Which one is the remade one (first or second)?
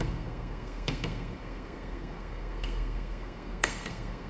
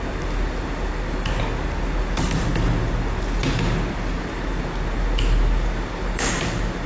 first